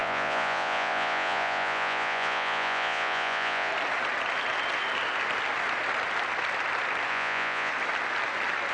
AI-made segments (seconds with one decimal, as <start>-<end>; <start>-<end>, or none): 0.0-3.7; 7.1-7.7